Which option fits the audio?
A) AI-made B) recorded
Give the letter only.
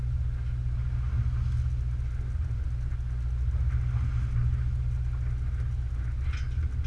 B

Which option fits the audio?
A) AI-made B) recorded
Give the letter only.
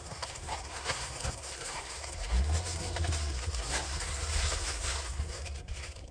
A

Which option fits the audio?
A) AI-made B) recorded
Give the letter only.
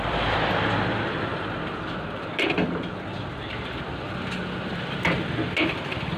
A